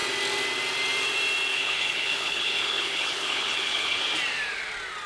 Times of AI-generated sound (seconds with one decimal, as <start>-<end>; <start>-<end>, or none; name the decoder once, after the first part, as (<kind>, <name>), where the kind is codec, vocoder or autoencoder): 1.5-4.0 (codec, HILCodec)